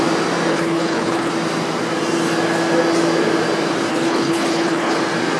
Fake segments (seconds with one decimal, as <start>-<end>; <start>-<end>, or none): 0.5-1.3; 3.9-5.0